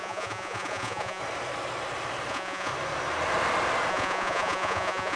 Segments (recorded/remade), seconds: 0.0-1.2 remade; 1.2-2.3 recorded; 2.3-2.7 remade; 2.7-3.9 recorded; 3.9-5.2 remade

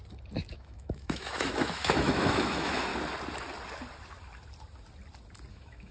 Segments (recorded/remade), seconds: 0.0-0.5 recorded; 0.5-2.9 remade; 2.9-5.5 recorded; 5.5-5.9 remade

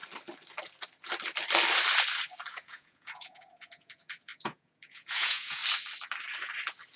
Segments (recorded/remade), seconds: 0.0-2.5 recorded; 2.5-5.6 remade; 5.6-7.0 recorded

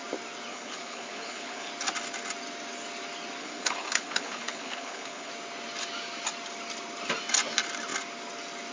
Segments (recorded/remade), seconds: 0.0-0.5 recorded; 0.5-1.7 remade; 1.7-3.4 recorded; 3.4-5.3 remade; 5.3-8.7 recorded

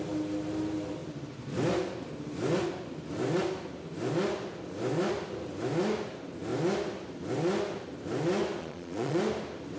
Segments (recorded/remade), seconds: 0.0-8.6 recorded; 8.6-9.2 remade; 9.2-9.8 recorded

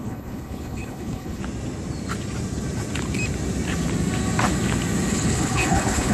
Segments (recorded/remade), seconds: 0.0-1.4 remade; 1.4-5.1 recorded; 5.1-6.1 remade

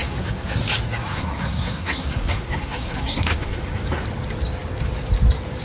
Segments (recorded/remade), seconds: 0.0-0.6 remade; 0.6-1.1 recorded; 1.1-3.6 remade; 3.6-5.6 recorded

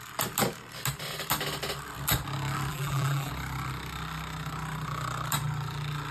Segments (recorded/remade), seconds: 0.0-2.7 recorded; 2.7-3.3 remade; 3.3-6.1 recorded